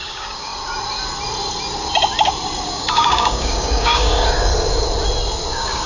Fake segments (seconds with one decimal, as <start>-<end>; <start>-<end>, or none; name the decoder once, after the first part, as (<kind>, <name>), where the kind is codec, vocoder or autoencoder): 0.0-0.5 (codec, DAC); 2.7-4.5; 5.5-5.9

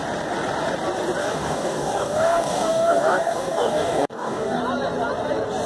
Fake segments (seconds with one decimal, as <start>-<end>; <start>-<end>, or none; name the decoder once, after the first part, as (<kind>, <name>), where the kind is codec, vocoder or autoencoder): 1.2-4.6 (codec, DAC)